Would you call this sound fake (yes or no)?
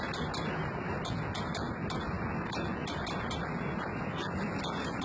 no